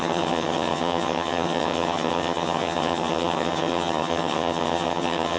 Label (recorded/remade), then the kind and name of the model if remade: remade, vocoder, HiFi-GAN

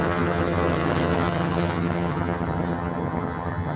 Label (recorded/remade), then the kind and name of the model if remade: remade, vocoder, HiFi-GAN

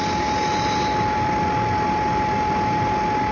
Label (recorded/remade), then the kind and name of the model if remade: recorded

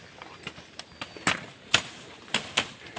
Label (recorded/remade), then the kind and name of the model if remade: recorded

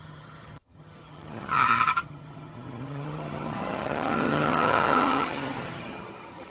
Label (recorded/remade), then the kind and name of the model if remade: remade, vocoder, HiFi-GAN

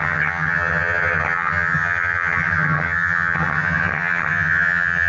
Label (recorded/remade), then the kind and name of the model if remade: remade, vocoder, HiFi-GAN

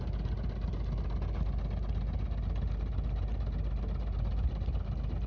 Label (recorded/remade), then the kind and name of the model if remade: recorded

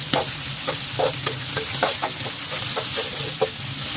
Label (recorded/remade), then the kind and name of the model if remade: recorded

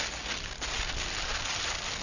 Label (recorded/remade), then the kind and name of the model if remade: recorded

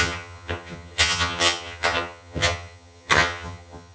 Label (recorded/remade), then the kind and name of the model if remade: remade, vocoder, HiFi-GAN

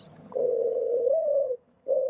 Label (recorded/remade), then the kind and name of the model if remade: remade, vocoder, HiFi-GAN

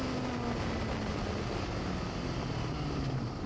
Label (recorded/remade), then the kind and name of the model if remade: recorded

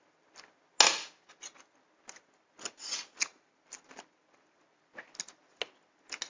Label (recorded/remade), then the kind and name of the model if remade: recorded